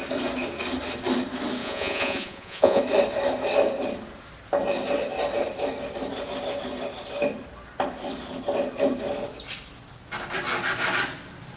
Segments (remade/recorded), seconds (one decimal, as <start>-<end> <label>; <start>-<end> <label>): 0.0-1.6 recorded; 1.6-2.8 remade; 2.8-11.6 recorded